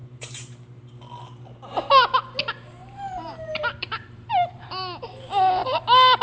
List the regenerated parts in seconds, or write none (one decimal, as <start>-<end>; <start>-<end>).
0.0-0.8; 2.8-4.7